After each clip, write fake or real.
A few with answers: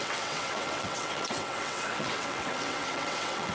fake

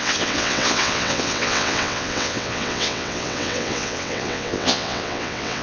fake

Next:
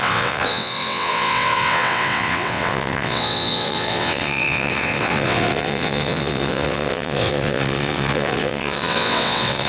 fake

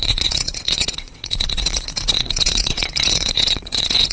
fake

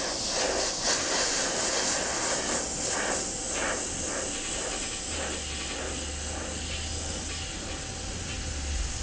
real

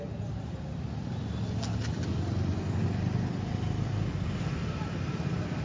real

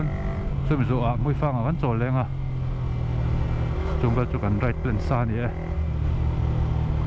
real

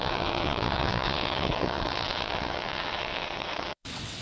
fake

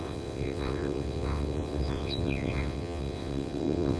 fake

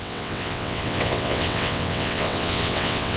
fake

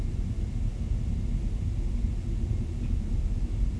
real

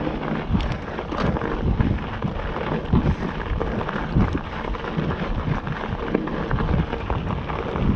real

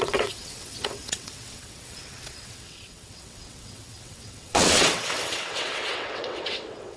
fake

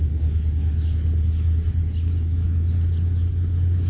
real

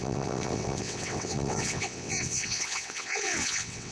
fake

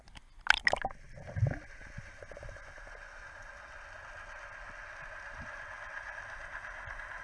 real